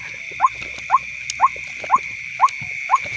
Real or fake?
real